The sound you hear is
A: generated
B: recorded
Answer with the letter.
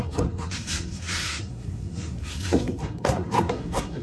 A